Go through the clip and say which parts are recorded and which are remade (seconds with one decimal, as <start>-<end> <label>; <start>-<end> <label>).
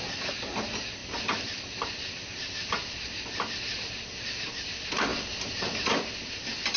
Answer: 0.0-6.8 recorded